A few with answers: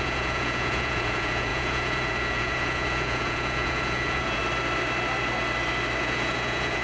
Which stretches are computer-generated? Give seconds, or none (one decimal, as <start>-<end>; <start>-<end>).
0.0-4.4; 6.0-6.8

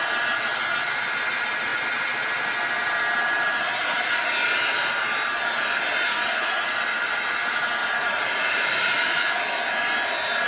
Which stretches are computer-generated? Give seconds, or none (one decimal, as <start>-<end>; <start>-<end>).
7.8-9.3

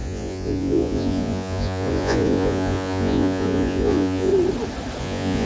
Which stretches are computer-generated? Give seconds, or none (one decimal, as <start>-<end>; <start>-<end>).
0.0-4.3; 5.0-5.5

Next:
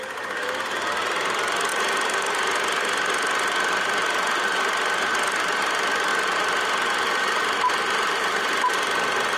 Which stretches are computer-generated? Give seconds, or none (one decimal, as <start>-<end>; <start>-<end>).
none

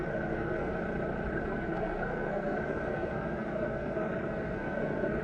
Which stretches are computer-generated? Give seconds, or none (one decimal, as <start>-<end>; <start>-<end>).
0.0-0.7; 1.4-5.2

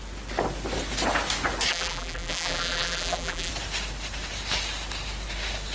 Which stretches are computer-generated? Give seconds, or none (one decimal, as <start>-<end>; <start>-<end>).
1.7-3.5

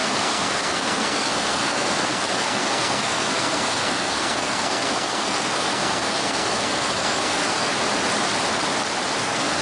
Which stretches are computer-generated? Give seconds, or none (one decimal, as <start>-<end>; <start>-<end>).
0.0-7.7; 9.2-9.6